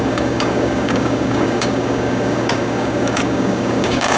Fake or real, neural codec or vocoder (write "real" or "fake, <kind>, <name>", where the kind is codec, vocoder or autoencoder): fake, codec, DAC